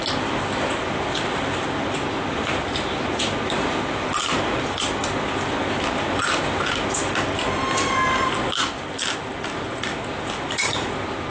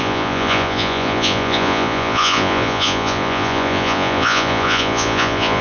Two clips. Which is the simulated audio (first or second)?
second